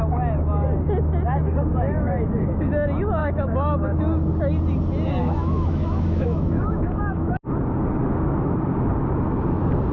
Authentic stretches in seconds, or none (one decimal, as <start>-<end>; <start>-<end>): 0.0-1.7; 2.7-3.2; 4.0-5.2; 7.3-9.9